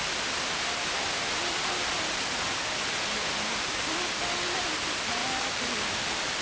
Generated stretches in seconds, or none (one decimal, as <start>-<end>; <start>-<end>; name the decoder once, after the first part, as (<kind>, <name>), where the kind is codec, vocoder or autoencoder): 5.2-6.4 (vocoder, BigVGAN v2)